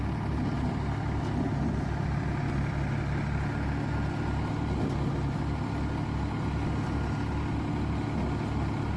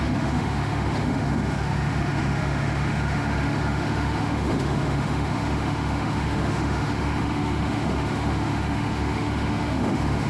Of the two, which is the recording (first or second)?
first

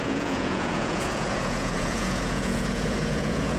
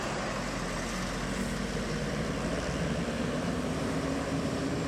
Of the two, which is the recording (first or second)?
second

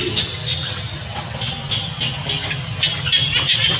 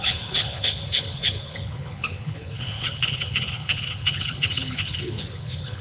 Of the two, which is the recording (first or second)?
first